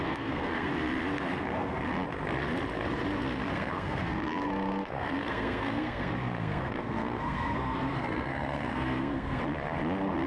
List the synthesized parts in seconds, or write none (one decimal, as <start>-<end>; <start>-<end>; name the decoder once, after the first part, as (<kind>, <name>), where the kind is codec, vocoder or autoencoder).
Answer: 0.0-0.7 (codec, SNAC); 1.3-1.9; 3.5-9.4